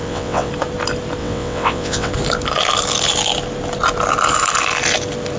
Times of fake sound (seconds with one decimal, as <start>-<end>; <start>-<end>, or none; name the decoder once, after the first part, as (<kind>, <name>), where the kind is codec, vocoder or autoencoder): 0.0-0.5 (vocoder, WaveNeXt); 1.2-2.1